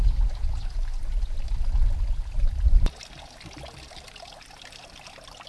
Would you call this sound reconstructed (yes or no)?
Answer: no